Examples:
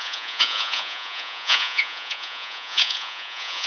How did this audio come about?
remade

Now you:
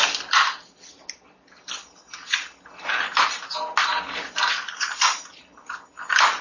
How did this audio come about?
recorded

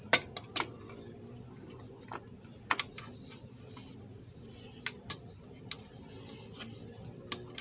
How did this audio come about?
recorded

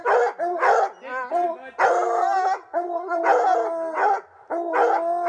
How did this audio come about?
recorded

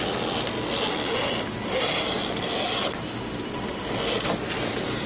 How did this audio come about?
recorded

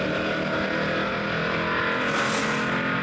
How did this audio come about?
recorded